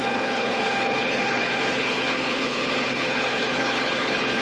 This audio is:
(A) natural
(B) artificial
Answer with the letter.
B